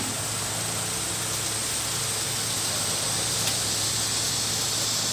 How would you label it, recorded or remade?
recorded